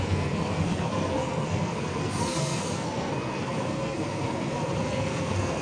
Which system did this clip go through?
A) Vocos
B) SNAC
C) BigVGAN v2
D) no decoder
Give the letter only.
B